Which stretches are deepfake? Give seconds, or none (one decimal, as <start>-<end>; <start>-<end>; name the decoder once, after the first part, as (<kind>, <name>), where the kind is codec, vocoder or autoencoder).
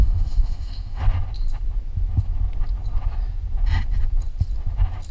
0.0-1.0 (autoencoder, DAC-VAE)